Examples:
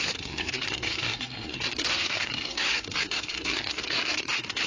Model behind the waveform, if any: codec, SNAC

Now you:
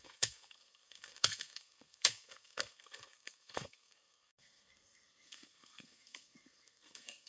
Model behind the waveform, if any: codec, SNAC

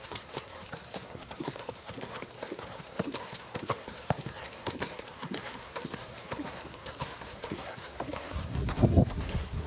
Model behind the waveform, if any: codec, SNAC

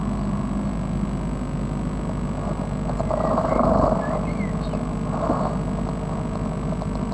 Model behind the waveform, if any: none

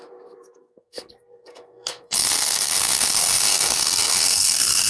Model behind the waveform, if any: codec, SNAC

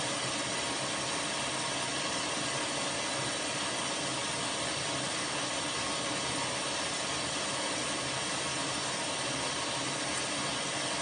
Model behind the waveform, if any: none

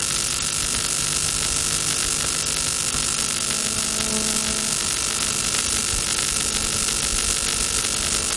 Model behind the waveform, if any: none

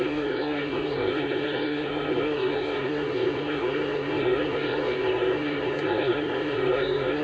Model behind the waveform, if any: codec, SNAC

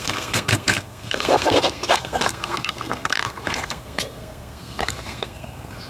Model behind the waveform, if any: codec, SNAC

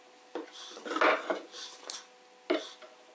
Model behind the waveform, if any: none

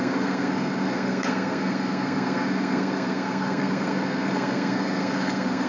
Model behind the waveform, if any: codec, SNAC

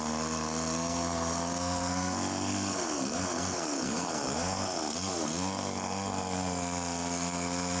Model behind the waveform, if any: codec, SNAC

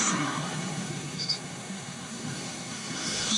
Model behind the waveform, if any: codec, SNAC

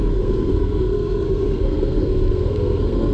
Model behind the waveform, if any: codec, SNAC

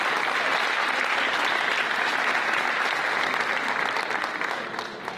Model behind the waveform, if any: none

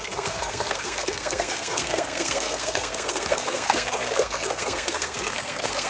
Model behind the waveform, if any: codec, SNAC